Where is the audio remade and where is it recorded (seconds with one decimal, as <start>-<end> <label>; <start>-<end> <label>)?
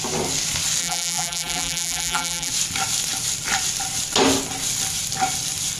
0.0-0.8 recorded; 0.8-2.5 remade; 2.5-5.8 recorded